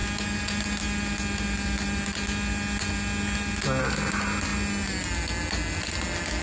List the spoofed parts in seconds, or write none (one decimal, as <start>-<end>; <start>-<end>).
none